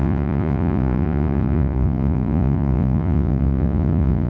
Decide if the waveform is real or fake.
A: fake